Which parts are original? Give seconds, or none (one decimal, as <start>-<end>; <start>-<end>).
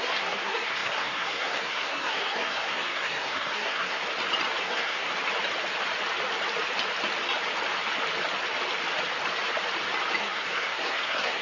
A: 4.0-4.6; 5.1-10.2